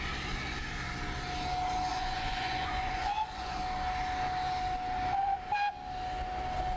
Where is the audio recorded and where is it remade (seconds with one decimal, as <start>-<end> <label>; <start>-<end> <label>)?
0.0-1.9 recorded; 1.9-3.6 remade; 3.6-6.8 recorded